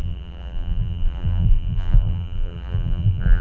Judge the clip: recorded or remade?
remade